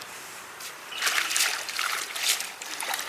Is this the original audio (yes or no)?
no